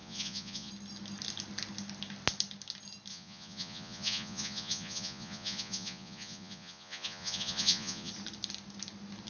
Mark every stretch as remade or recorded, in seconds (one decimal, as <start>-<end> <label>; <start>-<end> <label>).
0.0-0.7 remade; 0.7-3.1 recorded; 3.1-8.1 remade; 8.1-9.3 recorded